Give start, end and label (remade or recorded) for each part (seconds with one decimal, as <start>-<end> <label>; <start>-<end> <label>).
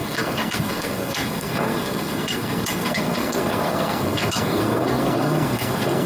0.0-6.1 remade